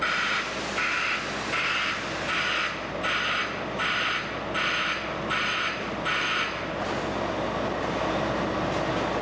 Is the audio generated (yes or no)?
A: no